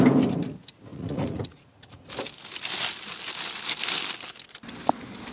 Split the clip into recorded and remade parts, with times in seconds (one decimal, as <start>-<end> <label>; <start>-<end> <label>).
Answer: 0.0-0.9 recorded; 0.9-2.1 remade; 2.1-5.3 recorded